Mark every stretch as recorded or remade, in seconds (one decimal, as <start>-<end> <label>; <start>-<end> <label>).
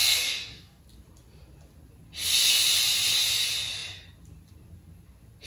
0.0-0.8 remade; 0.8-5.5 recorded